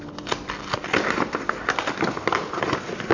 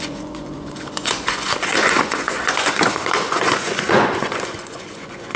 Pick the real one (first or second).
first